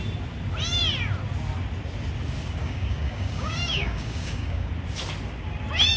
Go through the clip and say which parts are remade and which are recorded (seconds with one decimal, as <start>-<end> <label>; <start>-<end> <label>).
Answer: 0.0-2.6 recorded; 2.6-4.7 remade; 4.7-6.0 recorded